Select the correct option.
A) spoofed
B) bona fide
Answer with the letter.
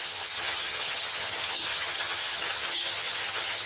A